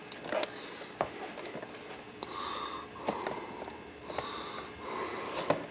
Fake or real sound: real